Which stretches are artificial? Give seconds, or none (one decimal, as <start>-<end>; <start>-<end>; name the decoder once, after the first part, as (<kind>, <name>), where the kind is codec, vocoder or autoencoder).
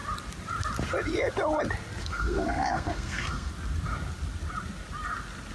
2.0-3.5 (codec, SNAC)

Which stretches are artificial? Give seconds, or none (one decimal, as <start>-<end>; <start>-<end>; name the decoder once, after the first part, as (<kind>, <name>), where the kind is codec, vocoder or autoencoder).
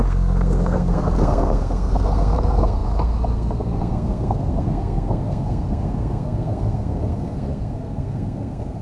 0.0-8.8 (codec, SNAC)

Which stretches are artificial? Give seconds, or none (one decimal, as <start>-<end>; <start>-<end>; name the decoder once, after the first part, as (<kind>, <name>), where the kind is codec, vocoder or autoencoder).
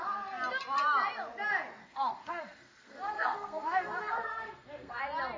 1.8-5.0 (codec, SNAC)